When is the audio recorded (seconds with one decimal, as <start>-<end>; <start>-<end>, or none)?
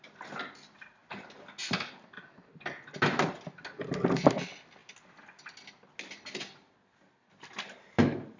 0.0-8.4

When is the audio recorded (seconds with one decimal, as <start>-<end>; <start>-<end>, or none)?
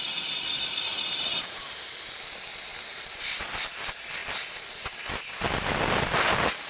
0.0-1.3; 1.8-2.7; 3.8-6.7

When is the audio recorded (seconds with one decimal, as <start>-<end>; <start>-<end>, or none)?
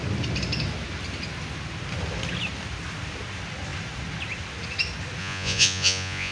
0.0-5.2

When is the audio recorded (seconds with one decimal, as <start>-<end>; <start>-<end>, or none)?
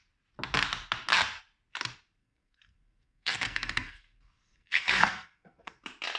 0.0-2.2; 5.8-6.2